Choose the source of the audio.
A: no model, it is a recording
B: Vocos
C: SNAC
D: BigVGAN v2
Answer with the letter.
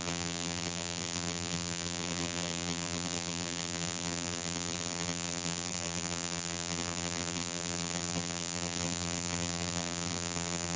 D